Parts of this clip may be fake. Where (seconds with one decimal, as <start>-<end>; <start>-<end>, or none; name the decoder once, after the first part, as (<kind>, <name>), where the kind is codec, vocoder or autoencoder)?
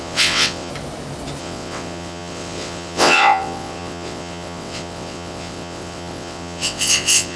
0.0-0.7 (vocoder, WaveNeXt); 1.4-7.4